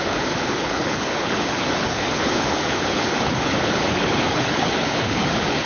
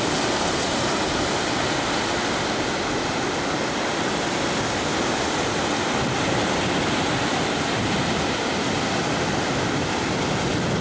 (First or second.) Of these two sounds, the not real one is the first